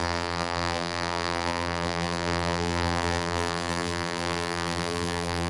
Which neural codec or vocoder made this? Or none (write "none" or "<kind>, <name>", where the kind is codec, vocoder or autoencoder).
vocoder, BigVGAN v2